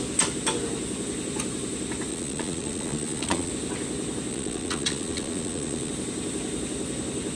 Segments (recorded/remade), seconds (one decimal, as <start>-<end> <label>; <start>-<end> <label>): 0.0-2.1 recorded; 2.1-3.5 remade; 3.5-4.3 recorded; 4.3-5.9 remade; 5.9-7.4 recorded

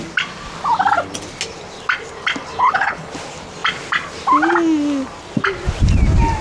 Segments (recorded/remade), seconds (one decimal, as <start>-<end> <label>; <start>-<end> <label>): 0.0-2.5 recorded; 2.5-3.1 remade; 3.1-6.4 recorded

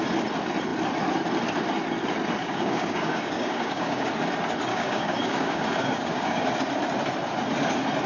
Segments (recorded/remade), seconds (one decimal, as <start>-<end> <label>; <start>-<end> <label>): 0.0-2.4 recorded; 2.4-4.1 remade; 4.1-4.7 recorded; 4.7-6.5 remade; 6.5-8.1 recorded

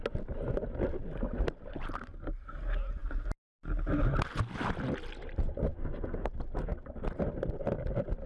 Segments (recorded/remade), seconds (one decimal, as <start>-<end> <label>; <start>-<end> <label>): 0.0-8.3 recorded